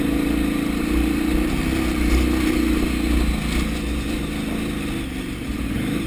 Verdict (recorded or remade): recorded